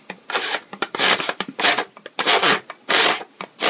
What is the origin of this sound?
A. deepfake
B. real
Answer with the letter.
B